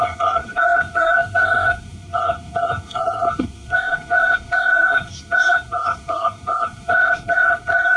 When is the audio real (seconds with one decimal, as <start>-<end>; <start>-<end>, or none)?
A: none